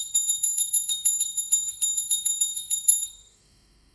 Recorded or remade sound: remade